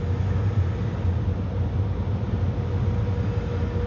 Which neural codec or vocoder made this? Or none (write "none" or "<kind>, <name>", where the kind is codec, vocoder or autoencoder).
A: none